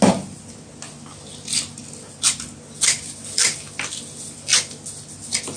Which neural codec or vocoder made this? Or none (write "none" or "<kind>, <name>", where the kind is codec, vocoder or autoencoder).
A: none